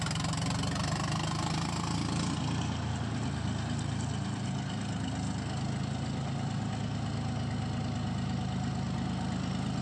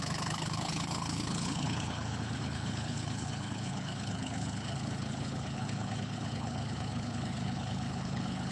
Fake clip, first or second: second